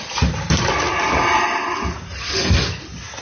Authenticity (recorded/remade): recorded